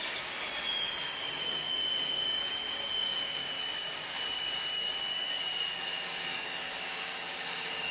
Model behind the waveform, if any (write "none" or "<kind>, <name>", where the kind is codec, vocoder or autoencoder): codec, DAC